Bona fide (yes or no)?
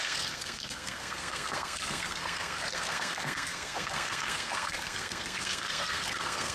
no